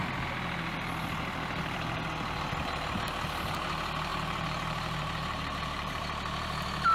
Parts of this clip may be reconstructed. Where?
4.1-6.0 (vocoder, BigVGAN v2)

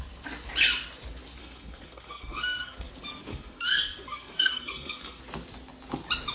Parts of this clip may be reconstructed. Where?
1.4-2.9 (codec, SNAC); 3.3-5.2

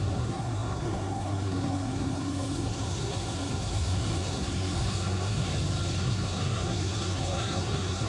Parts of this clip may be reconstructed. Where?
0.0-5.5 (codec, SNAC); 6.0-8.1

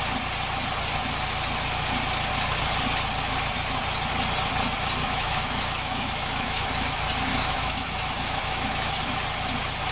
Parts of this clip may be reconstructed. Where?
5.0-6.6 (autoencoder, DAC-VAE); 7.3-9.0

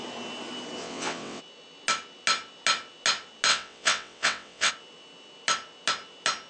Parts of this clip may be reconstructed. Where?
0.8-1.4 (vocoder, WaveNeXt); 3.5-4.7